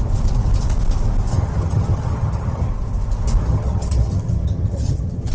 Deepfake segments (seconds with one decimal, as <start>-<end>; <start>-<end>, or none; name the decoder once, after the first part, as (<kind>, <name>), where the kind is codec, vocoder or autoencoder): 1.3-2.7 (vocoder, HiFi-GAN); 3.4-5.3